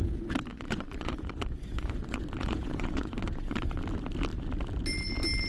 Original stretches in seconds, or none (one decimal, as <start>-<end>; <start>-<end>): 0.0-0.5; 3.8-5.5